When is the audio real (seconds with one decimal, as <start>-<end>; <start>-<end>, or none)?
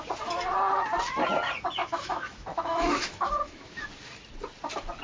0.0-1.8; 3.9-5.0